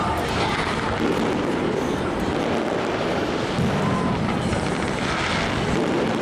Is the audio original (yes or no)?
yes